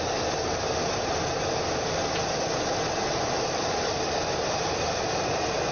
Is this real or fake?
fake